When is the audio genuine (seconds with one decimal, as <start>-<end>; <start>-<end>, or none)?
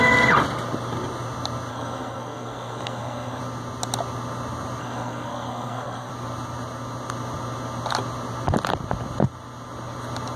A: 0.0-1.7; 3.4-4.8; 6.1-10.4